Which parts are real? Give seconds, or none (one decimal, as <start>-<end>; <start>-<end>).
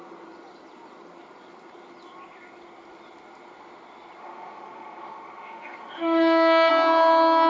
0.0-4.2; 6.7-7.5